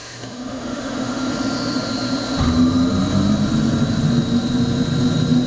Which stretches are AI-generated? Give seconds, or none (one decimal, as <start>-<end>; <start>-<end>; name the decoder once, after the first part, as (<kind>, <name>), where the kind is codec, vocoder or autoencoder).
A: 0.0-1.3 (autoencoder, DAC-VAE)